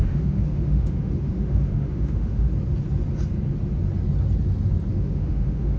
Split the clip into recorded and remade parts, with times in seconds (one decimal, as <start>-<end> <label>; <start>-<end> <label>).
0.0-2.5 remade; 2.5-4.9 recorded; 4.9-5.8 remade